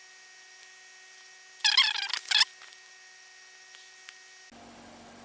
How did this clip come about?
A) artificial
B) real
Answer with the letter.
B